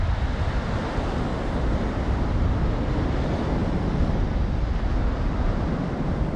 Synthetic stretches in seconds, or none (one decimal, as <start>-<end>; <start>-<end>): none